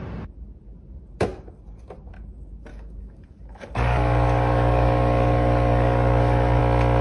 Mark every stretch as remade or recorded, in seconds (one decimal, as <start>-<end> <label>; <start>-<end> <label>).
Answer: 0.0-2.7 recorded; 2.7-6.6 remade; 6.6-7.0 recorded